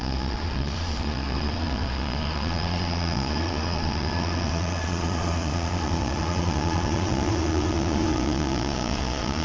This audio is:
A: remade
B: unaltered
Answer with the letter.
A